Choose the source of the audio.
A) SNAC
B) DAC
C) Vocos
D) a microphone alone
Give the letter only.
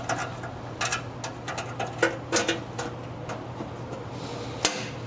D